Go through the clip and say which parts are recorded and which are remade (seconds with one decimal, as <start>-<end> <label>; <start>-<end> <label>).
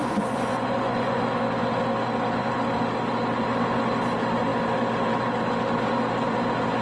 0.0-1.2 remade; 1.2-6.8 recorded